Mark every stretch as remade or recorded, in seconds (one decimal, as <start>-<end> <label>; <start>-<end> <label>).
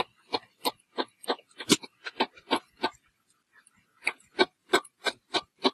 0.0-4.6 recorded; 4.6-5.2 remade; 5.2-5.7 recorded